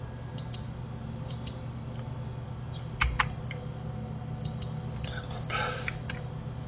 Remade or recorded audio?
recorded